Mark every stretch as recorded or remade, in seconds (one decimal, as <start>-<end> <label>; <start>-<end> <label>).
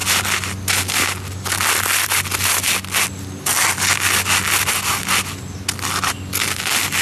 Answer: 0.0-7.0 recorded